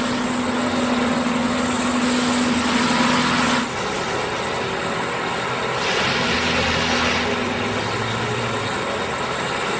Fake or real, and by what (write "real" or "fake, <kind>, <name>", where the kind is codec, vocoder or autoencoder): real